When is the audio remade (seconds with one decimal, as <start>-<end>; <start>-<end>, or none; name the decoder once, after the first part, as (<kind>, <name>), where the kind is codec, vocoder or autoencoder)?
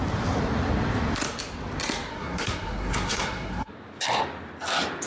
2.1-3.7 (codec, SNAC)